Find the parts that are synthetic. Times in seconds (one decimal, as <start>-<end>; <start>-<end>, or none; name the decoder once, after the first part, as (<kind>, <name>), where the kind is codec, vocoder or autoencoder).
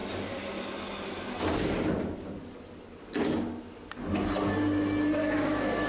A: 5.2-5.9 (autoencoder, DAC-VAE)